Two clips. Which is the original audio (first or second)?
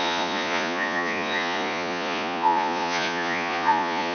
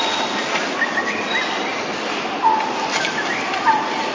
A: second